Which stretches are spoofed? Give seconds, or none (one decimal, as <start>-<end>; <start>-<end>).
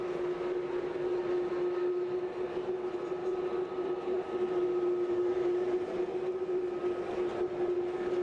5.3-6.0